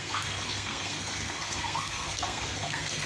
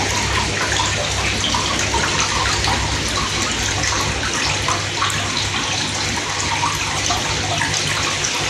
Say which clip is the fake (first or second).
first